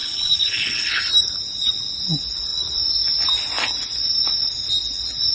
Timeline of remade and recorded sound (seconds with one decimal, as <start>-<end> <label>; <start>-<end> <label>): 0.0-1.0 remade; 1.0-5.3 recorded